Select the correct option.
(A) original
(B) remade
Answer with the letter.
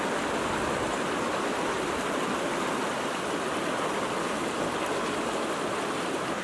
A